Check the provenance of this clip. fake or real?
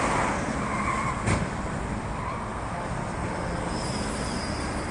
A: real